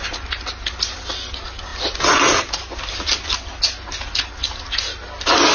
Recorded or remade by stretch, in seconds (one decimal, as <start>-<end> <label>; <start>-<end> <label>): 0.0-5.5 recorded